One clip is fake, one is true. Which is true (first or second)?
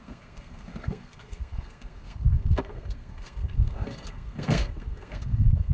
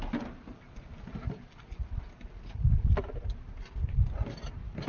second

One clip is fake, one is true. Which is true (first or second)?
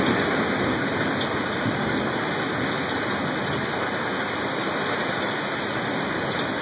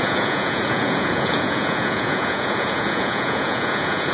first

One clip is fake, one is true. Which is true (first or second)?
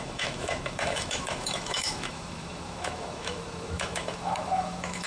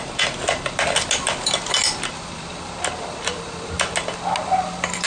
second